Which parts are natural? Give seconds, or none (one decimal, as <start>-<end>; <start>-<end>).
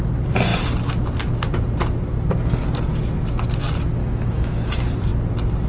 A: 0.0-4.0; 4.6-5.7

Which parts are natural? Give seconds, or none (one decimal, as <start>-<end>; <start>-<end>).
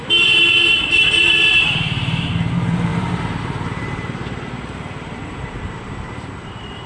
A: 4.2-5.2